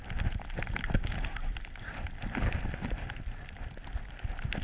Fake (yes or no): no